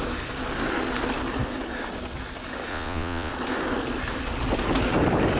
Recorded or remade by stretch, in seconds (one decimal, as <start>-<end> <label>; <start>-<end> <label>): 0.0-2.7 recorded; 2.7-3.3 remade; 3.3-5.4 recorded